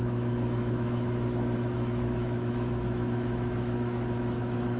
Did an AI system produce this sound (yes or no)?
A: yes